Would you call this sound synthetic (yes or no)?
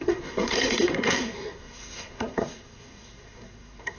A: yes